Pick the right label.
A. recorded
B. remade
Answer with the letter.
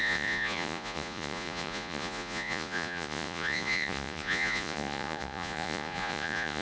B